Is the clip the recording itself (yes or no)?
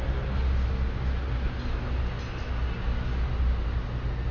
yes